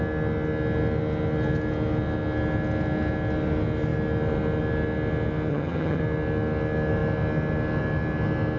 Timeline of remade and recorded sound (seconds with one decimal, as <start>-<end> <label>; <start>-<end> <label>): 0.0-5.5 recorded; 5.5-6.0 remade; 6.0-8.6 recorded